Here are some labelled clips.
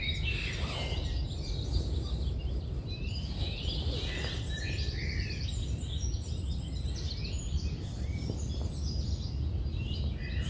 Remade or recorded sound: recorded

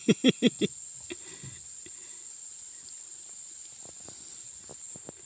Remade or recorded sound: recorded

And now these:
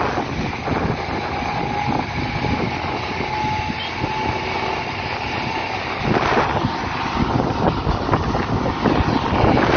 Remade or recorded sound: recorded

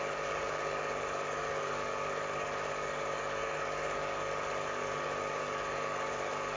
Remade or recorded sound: remade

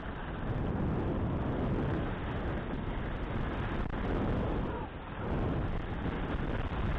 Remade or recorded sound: recorded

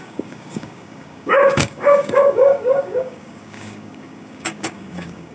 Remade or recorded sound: remade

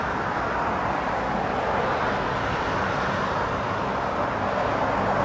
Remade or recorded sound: recorded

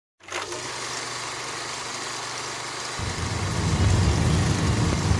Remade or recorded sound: recorded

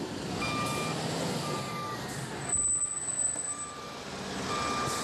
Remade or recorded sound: recorded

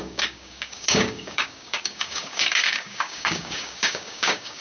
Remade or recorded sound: remade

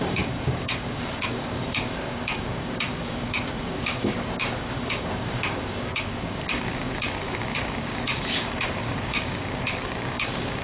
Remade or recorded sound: remade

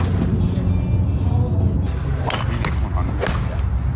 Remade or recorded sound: recorded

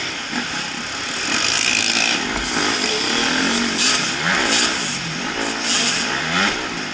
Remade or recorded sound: recorded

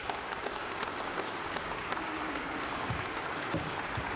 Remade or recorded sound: remade